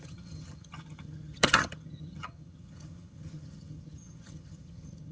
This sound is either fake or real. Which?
fake